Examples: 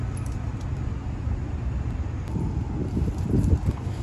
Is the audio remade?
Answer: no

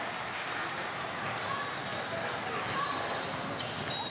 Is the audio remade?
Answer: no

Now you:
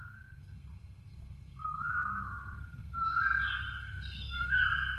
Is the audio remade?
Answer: yes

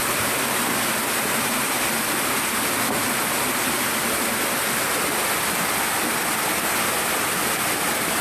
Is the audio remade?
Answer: no